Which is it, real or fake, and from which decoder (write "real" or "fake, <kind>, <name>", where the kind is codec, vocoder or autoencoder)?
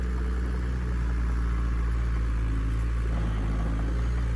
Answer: real